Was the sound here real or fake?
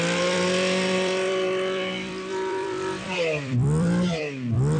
fake